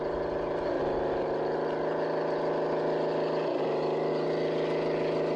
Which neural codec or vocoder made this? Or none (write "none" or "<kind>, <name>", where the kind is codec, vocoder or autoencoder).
none